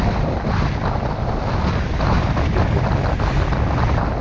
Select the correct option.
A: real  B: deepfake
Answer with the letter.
A